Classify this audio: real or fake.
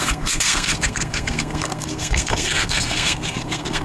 fake